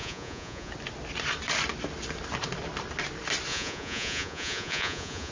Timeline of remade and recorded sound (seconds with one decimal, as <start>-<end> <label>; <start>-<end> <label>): 0.0-0.7 remade; 0.7-3.5 recorded; 3.5-5.3 remade

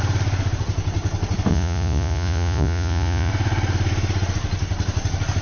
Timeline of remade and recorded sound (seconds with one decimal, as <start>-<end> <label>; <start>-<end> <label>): 0.0-1.5 recorded; 1.5-3.3 remade; 3.3-5.4 recorded

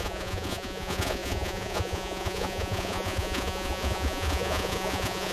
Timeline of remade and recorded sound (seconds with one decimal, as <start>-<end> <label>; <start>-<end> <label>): 0.0-5.3 remade